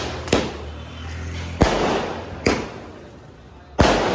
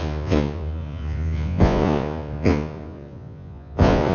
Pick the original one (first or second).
first